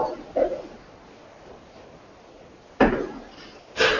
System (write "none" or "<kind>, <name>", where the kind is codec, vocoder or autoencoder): none